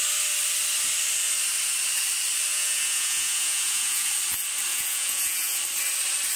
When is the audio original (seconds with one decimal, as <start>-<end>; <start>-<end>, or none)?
0.0-2.5; 4.1-4.7; 5.6-6.4